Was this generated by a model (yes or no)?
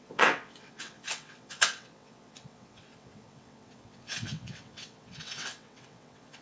yes